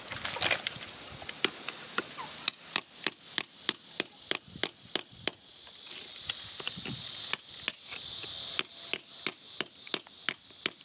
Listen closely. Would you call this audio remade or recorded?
recorded